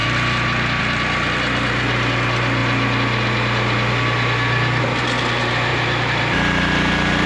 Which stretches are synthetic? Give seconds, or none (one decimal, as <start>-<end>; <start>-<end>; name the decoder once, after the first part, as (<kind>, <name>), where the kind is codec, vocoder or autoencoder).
none